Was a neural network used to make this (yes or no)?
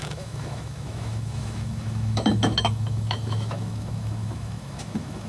yes